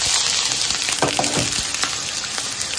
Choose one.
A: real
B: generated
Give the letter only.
A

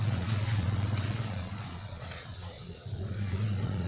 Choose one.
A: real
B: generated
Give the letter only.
B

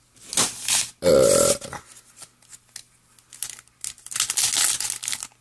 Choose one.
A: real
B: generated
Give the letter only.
A